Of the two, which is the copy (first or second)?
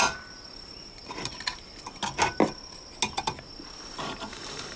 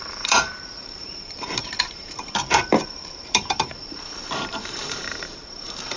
second